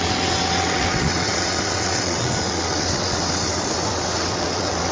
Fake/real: fake